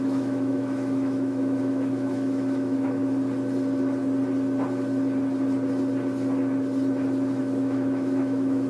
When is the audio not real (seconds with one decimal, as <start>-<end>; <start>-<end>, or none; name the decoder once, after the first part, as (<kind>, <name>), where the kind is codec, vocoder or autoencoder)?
0.0-3.0 (autoencoder, DAC-VAE); 7.4-8.7